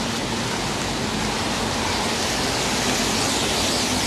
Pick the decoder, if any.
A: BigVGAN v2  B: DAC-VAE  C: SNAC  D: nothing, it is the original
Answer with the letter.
D